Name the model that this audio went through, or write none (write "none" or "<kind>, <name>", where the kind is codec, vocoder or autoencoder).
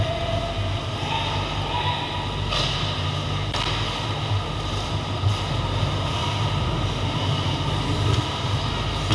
none